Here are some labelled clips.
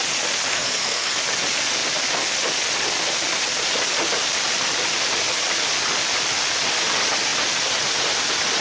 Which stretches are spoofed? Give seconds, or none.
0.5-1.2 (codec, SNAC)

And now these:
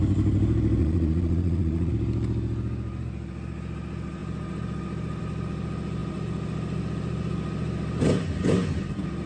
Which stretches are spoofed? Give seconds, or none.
0.8-1.9 (vocoder, Vocos)

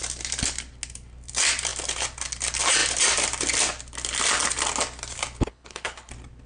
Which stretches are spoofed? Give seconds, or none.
5.4-6.1 (codec, HILCodec)

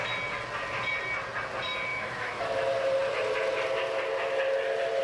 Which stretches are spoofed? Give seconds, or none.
1.9-2.4 (autoencoder, DAC-VAE)

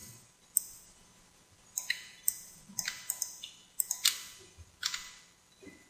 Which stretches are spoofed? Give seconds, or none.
none

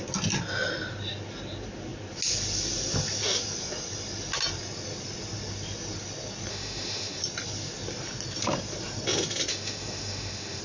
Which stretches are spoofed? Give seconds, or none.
6.5-7.2 (autoencoder, DAC-VAE); 9.5-10.6

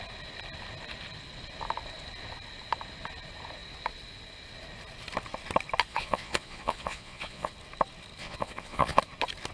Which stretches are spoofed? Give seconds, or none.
5.9-7.5 (vocoder, Vocos); 8.2-9.0

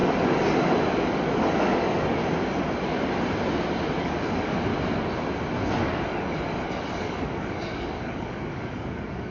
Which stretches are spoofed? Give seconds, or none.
1.8-2.2 (codec, DAC); 4.0-4.7; 5.8-9.3